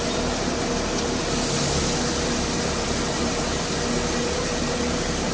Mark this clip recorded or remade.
recorded